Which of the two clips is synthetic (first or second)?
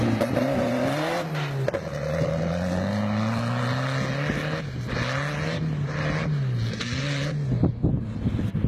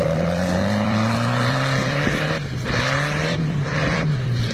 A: second